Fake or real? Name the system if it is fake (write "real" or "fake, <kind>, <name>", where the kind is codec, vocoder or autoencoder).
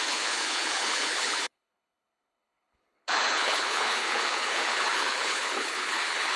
fake, codec, HILCodec